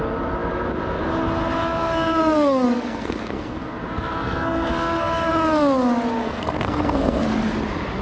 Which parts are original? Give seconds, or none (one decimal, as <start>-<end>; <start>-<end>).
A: 0.0-1.6; 5.3-6.2; 7.2-8.0